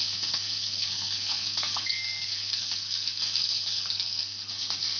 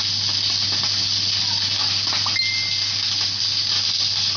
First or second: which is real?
second